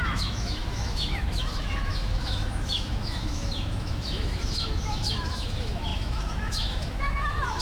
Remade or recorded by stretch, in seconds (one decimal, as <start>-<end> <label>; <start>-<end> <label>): 0.0-7.6 remade